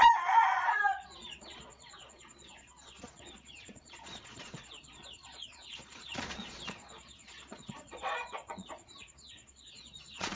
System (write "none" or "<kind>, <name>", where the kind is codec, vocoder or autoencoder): vocoder, Vocos